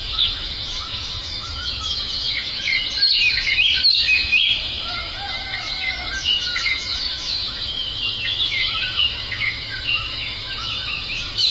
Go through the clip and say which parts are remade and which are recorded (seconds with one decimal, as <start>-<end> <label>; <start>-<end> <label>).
0.0-2.7 remade; 2.7-3.3 recorded; 3.3-11.5 remade